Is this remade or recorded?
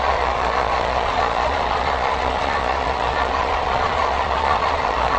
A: remade